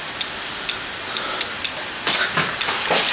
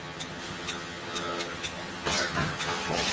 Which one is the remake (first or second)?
second